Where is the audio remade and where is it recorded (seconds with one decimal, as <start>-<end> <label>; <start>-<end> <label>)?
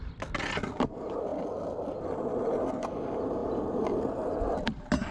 0.0-5.1 recorded